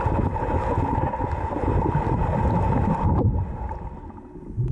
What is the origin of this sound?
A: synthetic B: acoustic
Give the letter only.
B